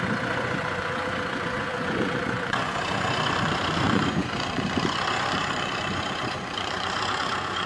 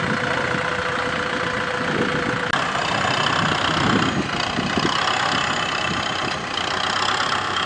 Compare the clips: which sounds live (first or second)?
second